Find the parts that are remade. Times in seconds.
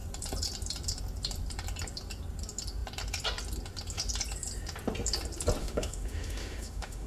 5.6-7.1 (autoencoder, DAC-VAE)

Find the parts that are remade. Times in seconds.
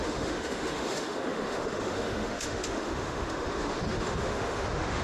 0.0-5.0 (autoencoder, DAC-VAE)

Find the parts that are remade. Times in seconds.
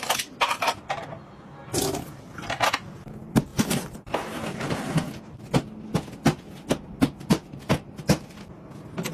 none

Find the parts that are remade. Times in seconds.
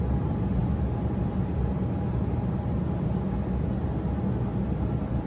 none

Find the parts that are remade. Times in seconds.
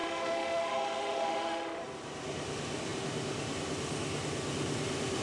0.0-1.8 (autoencoder, DAC-VAE)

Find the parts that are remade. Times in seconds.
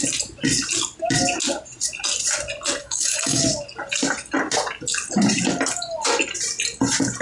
2.8-3.4 (autoencoder, DAC-VAE)